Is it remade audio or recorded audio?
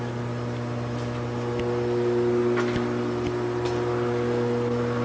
recorded